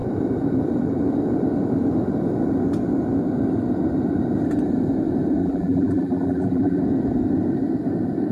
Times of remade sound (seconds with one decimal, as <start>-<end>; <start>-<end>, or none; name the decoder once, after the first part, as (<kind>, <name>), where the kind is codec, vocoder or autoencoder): 5.4-6.8 (vocoder, BigVGAN v2)